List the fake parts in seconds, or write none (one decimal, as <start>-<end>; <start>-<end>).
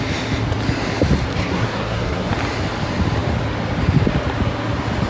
1.3-2.3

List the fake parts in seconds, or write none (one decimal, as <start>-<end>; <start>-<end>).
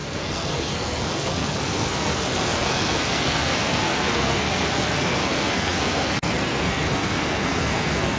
0.0-8.2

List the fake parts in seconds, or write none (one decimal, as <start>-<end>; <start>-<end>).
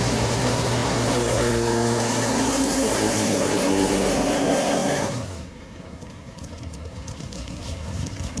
0.0-8.4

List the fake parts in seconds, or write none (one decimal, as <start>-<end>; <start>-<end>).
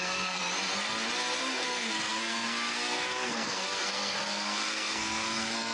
0.0-0.4; 1.4-5.7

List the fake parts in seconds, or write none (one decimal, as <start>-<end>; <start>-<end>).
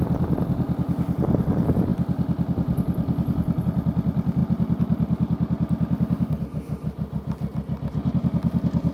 none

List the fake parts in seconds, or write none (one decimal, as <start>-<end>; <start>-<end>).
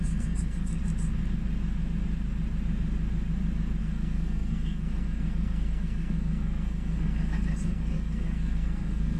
0.0-0.8; 3.8-9.2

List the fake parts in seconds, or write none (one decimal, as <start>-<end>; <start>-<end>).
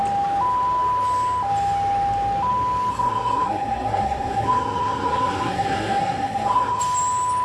2.9-6.8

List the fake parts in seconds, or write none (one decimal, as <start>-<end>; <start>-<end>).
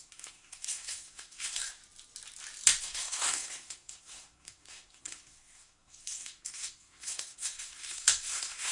0.0-1.8; 2.8-8.7